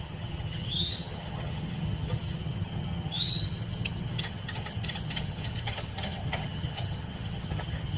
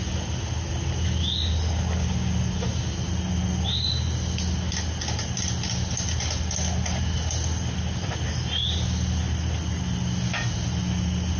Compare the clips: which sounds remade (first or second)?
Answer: first